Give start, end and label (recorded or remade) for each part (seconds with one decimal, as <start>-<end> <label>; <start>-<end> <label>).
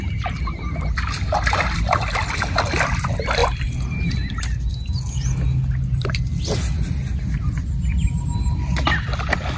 0.0-9.6 recorded